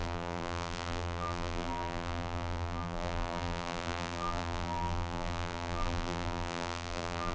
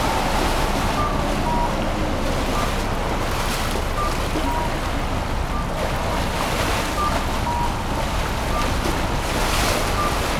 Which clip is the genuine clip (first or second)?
second